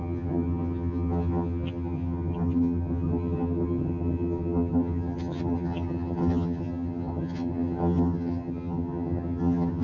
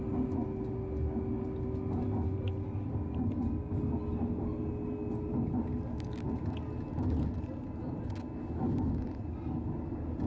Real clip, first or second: second